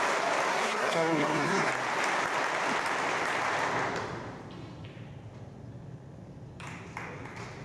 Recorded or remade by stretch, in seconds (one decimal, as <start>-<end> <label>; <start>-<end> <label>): 0.0-0.5 recorded; 0.5-1.7 remade; 1.7-7.6 recorded